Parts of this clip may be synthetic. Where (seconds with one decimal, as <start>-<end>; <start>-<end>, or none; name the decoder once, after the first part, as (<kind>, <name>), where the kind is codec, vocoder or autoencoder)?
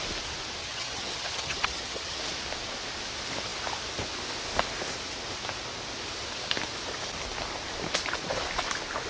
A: 0.6-2.2 (vocoder, HiFi-GAN)